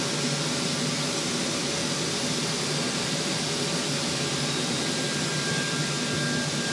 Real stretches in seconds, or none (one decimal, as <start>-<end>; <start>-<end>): 0.0-6.7